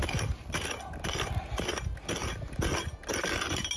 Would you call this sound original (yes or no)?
yes